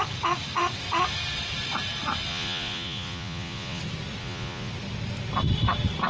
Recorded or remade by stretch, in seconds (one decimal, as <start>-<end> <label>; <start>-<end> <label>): 0.0-2.3 recorded; 2.3-3.8 remade; 3.8-4.2 recorded; 4.2-4.7 remade; 4.7-6.1 recorded